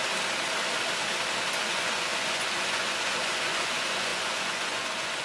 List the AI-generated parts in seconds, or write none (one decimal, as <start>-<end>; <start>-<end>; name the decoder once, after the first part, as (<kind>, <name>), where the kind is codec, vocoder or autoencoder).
1.6-5.2 (vocoder, Vocos)